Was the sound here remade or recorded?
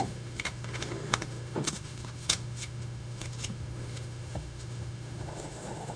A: remade